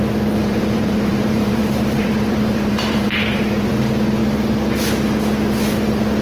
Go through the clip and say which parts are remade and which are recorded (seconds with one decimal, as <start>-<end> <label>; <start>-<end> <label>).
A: 0.0-0.4 recorded; 0.4-3.7 remade; 3.7-6.2 recorded